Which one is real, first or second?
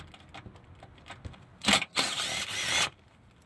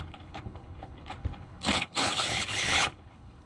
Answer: first